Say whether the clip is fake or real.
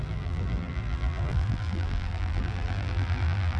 fake